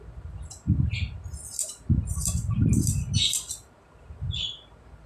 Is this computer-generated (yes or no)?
no